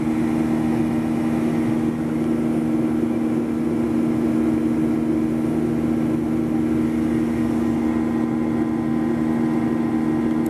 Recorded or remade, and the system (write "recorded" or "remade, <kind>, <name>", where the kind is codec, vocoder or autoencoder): recorded